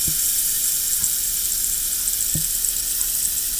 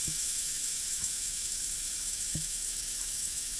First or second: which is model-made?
second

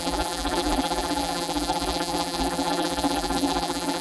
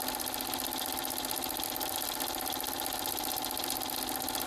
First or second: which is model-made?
first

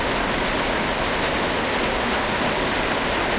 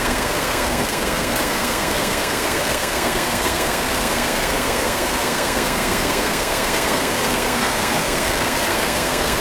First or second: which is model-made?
second